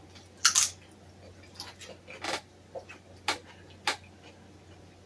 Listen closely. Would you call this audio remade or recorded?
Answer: recorded